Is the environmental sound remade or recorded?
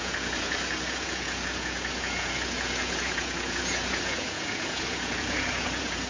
remade